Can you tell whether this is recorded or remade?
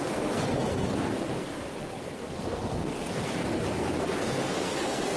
remade